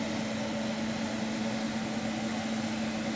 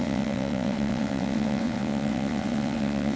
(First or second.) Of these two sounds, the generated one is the second